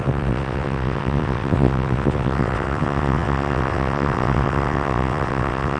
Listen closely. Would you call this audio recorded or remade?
remade